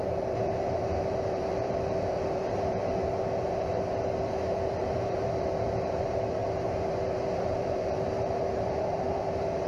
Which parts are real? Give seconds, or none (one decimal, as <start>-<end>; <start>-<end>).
2.8-4.2; 6.4-7.1